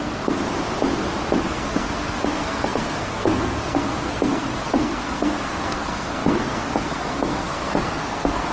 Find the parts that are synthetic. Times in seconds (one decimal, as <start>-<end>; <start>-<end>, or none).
0.0-0.4; 1.4-8.5